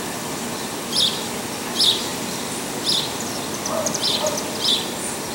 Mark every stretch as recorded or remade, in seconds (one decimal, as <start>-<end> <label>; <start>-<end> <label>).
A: 0.0-5.3 recorded